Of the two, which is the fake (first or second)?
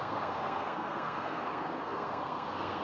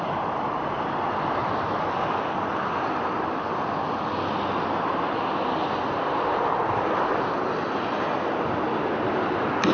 first